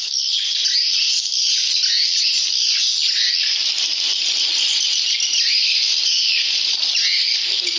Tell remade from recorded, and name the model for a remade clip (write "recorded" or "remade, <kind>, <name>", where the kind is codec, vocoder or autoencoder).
recorded